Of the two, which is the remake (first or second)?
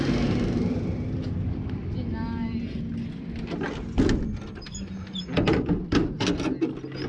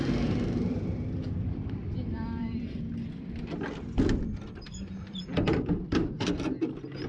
second